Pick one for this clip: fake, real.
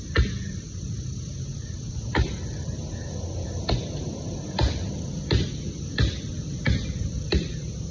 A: real